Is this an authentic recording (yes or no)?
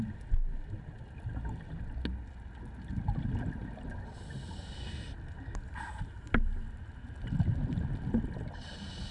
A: yes